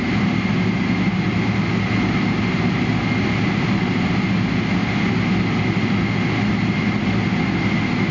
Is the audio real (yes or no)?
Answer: yes